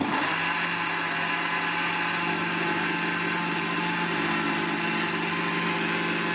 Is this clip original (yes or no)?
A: yes